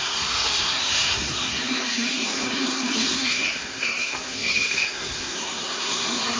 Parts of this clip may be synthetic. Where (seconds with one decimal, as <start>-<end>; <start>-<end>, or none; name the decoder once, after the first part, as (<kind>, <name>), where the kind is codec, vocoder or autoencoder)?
0.0-6.4 (codec, SNAC)